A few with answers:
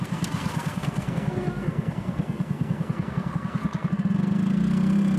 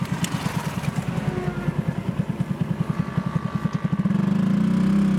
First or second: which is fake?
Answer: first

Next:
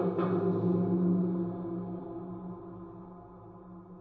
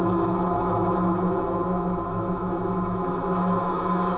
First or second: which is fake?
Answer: second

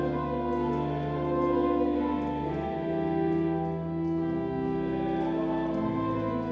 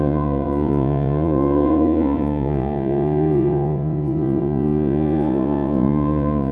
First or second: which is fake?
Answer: second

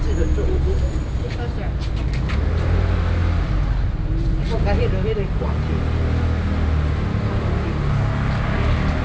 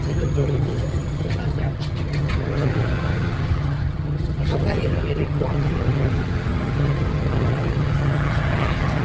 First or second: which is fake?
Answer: second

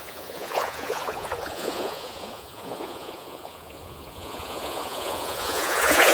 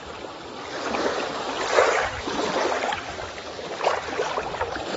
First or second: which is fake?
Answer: first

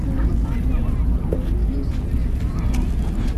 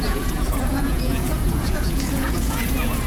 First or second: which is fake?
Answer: second